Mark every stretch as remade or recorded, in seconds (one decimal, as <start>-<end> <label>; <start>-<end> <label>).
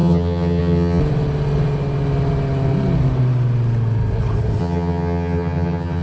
0.0-1.0 remade; 1.0-4.6 recorded; 4.6-6.0 remade